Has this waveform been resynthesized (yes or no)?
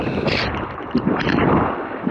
no